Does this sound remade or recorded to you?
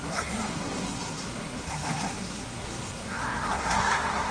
remade